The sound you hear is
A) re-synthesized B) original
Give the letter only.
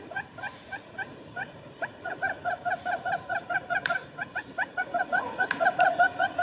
A